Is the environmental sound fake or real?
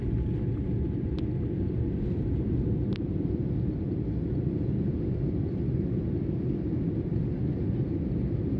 real